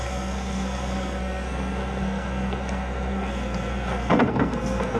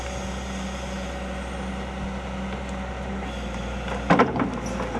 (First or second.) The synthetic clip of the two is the first